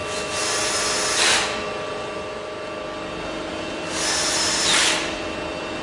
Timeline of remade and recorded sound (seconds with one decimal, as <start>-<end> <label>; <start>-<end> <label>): 0.0-5.8 recorded